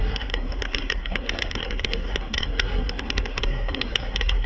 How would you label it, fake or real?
fake